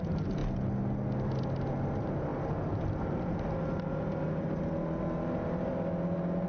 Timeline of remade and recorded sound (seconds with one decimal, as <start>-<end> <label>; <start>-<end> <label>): 0.0-6.5 recorded